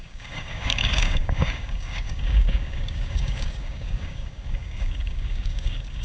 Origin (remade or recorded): remade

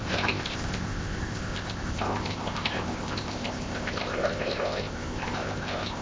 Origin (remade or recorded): remade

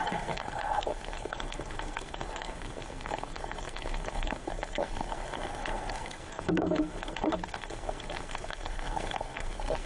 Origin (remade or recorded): remade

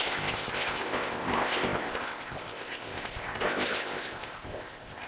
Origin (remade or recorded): remade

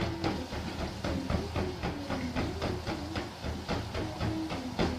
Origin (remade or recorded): recorded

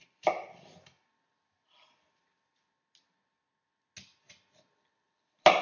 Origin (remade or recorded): recorded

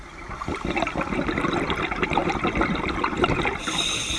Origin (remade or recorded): recorded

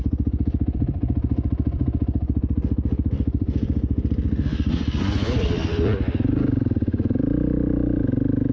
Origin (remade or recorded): remade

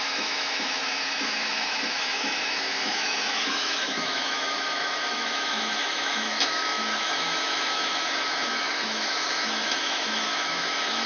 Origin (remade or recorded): remade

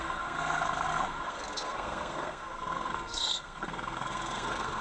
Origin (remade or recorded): remade